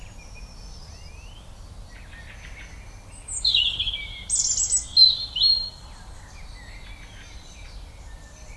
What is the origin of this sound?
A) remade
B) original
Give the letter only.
B